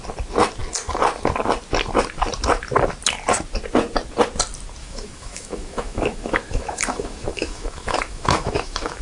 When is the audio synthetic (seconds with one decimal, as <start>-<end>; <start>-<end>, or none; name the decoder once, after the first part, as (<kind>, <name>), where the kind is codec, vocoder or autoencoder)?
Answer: 4.8-9.0 (autoencoder, DAC-VAE)